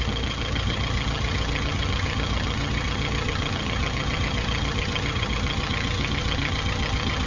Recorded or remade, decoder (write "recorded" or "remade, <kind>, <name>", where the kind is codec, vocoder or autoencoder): remade, vocoder, HiFi-GAN